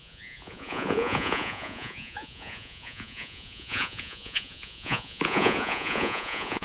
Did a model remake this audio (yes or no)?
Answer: yes